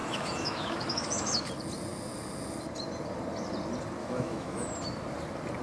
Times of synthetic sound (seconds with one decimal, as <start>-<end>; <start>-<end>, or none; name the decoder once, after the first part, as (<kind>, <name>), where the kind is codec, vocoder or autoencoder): 0.0-1.5 (autoencoder, DAC-VAE); 4.0-4.7